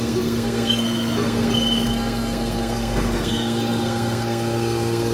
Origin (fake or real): fake